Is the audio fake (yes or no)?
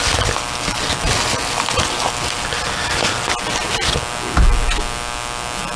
no